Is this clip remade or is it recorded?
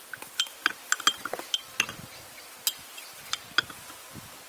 recorded